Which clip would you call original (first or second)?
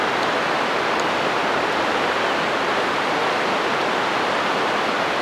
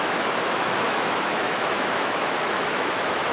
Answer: first